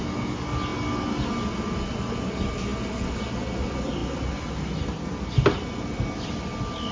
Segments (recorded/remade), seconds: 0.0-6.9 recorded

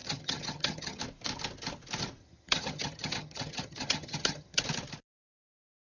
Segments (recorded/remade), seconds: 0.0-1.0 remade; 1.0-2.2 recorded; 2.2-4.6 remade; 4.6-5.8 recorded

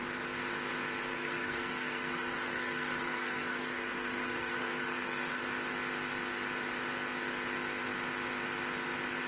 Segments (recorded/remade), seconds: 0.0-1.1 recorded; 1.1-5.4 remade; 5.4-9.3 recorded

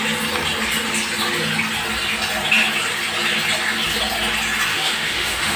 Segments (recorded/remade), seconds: 0.0-4.7 recorded; 4.7-5.6 remade